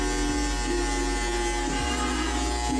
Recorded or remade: recorded